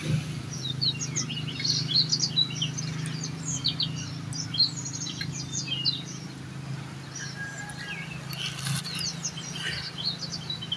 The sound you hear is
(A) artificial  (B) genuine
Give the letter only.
B